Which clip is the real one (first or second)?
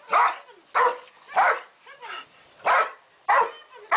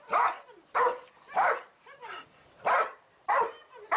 first